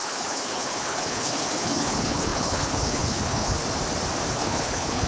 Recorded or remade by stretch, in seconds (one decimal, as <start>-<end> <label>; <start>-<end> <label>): 0.0-3.6 remade; 3.6-4.3 recorded; 4.3-5.1 remade